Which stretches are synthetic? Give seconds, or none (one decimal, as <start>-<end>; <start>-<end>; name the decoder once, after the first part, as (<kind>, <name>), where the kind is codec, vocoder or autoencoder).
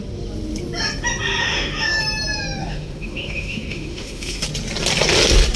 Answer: 1.4-2.0 (autoencoder, DAC-VAE); 2.6-4.4